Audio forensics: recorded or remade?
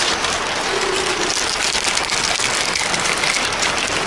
recorded